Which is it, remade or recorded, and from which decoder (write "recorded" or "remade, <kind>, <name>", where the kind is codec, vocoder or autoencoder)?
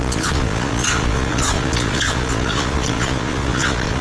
remade, vocoder, Vocos